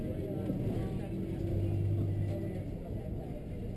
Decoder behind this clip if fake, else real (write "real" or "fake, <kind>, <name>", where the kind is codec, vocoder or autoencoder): real